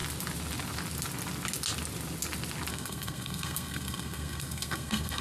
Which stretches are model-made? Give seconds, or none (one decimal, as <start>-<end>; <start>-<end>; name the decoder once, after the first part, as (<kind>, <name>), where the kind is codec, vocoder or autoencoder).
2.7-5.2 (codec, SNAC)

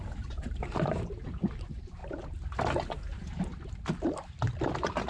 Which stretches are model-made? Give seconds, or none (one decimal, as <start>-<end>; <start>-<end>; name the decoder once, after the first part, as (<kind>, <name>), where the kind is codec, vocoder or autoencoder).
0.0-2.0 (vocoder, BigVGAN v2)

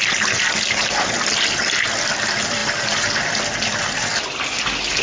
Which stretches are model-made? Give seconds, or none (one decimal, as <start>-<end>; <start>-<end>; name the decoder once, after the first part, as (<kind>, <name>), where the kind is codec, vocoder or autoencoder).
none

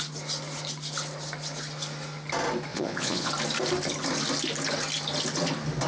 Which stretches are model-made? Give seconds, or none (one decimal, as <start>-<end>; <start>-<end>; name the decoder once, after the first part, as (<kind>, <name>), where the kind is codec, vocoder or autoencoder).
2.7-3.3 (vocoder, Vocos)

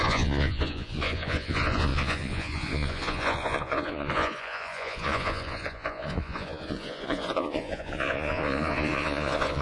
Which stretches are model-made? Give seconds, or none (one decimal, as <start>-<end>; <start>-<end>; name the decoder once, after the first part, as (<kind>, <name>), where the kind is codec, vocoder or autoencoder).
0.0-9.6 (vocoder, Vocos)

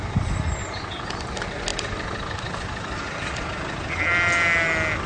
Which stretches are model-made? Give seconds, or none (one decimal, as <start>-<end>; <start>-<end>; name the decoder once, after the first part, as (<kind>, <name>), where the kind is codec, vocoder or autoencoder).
none

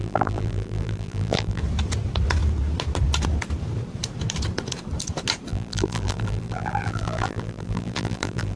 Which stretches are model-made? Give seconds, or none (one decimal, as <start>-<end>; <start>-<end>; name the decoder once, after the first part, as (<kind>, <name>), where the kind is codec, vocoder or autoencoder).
0.0-1.6 (vocoder, BigVGAN v2); 5.5-8.6